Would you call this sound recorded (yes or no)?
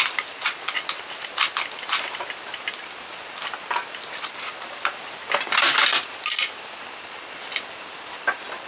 yes